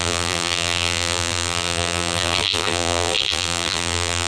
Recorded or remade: remade